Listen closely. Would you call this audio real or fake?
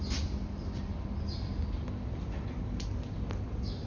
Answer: real